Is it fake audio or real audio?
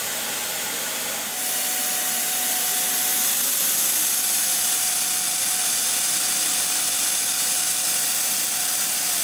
real